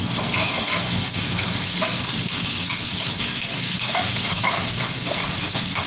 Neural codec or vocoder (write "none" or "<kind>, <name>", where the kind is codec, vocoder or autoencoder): codec, SNAC